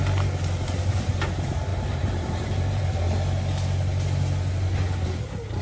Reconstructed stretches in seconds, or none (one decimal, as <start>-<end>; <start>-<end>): 1.7-3.0